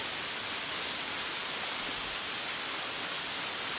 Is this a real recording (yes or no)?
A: yes